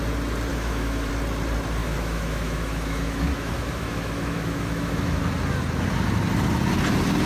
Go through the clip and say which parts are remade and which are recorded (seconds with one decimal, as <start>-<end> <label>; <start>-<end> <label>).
0.0-0.5 recorded; 0.5-1.1 remade; 1.1-1.8 recorded; 1.8-5.2 remade; 5.2-7.3 recorded